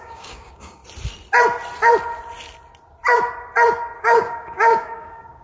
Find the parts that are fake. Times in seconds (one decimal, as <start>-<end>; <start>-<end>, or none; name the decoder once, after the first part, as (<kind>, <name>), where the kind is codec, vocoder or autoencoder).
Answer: 0.0-0.8 (codec, DAC); 4.0-5.4

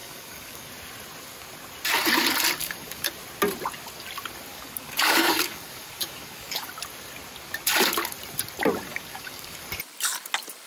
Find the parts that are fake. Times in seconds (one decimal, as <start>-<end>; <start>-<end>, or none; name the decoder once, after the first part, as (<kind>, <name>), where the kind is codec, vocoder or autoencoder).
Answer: 0.0-0.7 (codec, DAC); 2.6-3.1; 4.5-6.7; 8.9-9.6

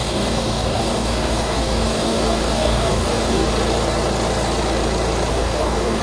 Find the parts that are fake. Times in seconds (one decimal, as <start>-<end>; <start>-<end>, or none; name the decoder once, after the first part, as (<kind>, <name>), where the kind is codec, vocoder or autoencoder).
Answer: 0.0-3.5 (codec, DAC); 5.3-6.0

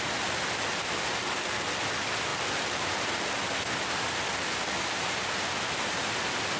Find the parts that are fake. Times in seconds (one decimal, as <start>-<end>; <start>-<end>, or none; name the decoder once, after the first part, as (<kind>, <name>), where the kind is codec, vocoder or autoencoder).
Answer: none